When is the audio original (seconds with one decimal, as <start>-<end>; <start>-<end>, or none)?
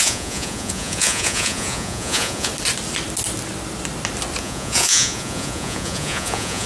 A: 2.5-4.4